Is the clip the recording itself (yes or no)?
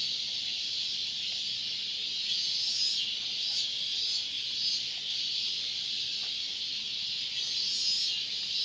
yes